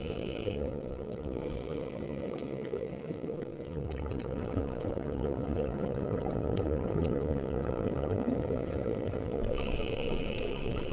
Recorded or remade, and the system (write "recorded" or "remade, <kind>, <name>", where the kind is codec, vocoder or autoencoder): remade, vocoder, WaveNeXt